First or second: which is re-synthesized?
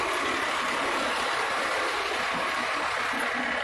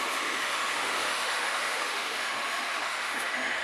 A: second